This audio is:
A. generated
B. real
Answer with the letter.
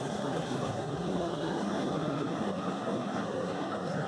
A